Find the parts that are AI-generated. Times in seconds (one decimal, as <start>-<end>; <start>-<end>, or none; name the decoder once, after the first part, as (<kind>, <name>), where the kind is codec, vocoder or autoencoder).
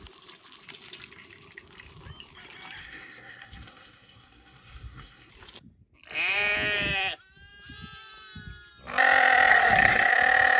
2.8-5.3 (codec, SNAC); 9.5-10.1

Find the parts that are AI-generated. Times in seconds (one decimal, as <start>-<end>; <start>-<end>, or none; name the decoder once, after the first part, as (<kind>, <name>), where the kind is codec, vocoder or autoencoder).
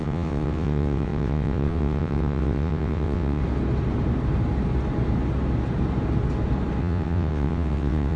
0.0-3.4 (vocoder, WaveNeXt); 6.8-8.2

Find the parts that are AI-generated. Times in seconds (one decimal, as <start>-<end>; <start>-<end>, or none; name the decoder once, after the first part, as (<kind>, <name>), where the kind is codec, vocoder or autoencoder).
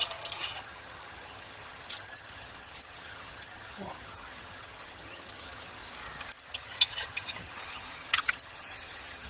0.0-5.8 (vocoder, HiFi-GAN); 6.4-9.3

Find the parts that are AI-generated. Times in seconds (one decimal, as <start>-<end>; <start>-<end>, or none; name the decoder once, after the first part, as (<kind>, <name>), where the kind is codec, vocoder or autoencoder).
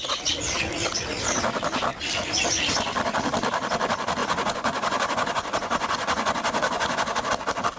4.2-7.3 (vocoder, Vocos)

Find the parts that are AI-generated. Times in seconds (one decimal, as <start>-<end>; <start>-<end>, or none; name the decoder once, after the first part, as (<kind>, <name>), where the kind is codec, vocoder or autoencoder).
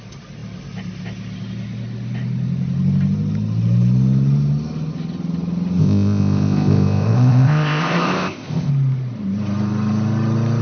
5.8-8.7 (codec, ZipCodec)